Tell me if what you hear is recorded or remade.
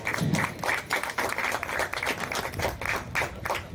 recorded